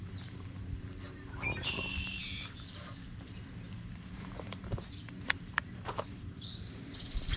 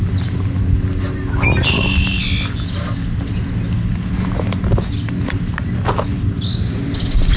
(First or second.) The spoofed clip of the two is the first